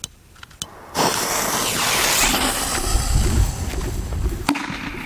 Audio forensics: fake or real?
real